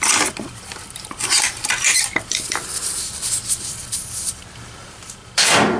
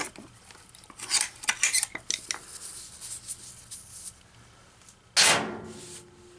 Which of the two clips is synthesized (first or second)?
first